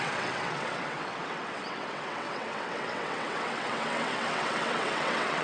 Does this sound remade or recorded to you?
remade